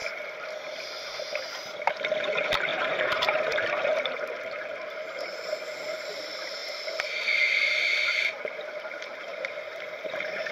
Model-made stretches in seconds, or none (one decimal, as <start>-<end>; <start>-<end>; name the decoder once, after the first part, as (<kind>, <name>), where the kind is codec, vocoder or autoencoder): 2.2-10.5 (vocoder, BigVGAN v2)